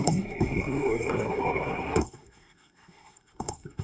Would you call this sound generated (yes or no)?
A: yes